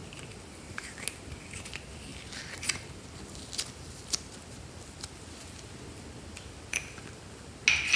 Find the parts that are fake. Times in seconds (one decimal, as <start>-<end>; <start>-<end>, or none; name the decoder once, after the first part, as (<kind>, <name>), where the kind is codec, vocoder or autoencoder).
none